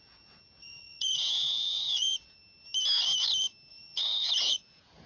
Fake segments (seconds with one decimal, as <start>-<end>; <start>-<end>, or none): 0.0-2.4; 3.7-5.1